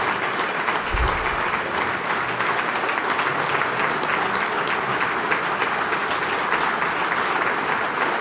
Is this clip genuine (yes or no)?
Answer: yes